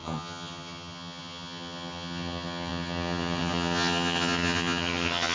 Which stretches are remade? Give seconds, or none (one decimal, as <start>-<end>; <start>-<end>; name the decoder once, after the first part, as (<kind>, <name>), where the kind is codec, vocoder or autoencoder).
0.0-5.3 (vocoder, HiFi-GAN)